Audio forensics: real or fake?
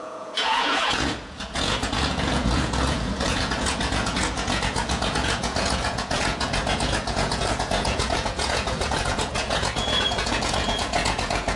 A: fake